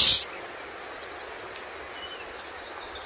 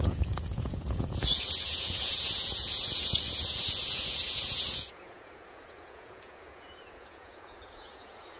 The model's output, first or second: second